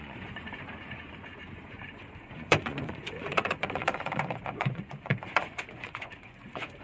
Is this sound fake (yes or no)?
yes